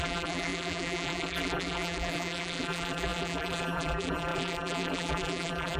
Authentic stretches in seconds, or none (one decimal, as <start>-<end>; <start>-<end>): none

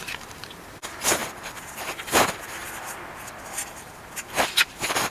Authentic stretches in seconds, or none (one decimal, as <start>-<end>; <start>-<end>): 2.6-3.9

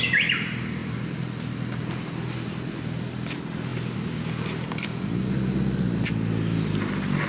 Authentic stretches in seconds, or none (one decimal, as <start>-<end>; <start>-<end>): 0.0-7.3

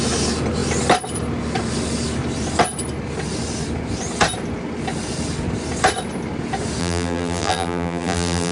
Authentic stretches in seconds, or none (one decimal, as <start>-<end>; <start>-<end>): 0.0-6.8

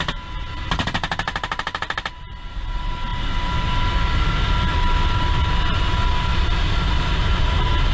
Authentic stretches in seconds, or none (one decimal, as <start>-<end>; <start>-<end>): 0.0-7.9